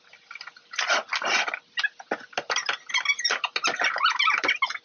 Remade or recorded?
recorded